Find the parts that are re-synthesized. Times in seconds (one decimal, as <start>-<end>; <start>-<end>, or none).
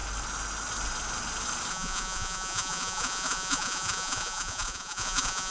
1.7-5.5